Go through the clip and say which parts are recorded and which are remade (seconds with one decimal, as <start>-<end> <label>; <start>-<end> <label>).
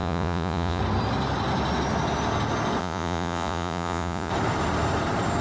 0.0-0.8 remade; 0.8-2.8 recorded; 2.8-4.3 remade; 4.3-5.4 recorded